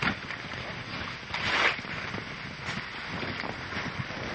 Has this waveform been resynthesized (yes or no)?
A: no